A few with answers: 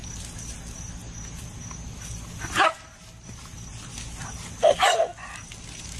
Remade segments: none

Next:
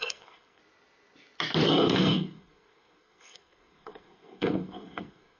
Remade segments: 0.0-0.6 (codec, SNAC); 1.7-5.4

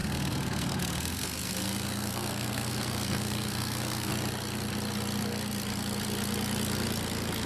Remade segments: 0.0-4.1 (codec, SNAC)